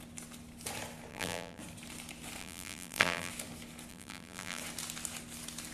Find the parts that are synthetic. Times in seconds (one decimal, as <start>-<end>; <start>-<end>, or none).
1.1-1.6; 2.4-3.3; 3.9-4.6

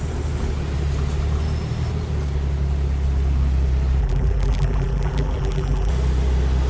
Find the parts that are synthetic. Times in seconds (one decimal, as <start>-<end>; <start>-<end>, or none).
4.0-5.9